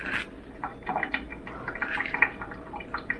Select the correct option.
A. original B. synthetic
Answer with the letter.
A